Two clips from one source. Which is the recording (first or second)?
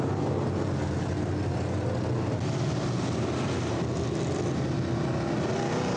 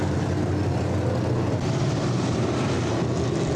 first